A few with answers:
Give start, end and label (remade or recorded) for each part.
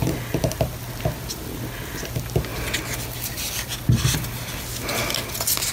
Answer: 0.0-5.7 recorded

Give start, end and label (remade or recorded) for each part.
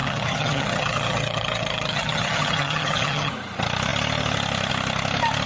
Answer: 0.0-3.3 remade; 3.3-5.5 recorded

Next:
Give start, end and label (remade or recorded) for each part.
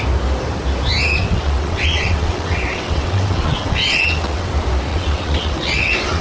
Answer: 0.0-1.2 recorded; 1.2-4.5 remade; 4.5-4.9 recorded; 4.9-6.2 remade